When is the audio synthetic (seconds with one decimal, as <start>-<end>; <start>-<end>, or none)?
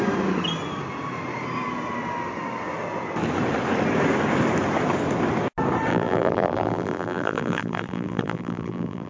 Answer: 5.9-9.1